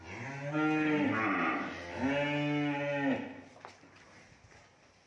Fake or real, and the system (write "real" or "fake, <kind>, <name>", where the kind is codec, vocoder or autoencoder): real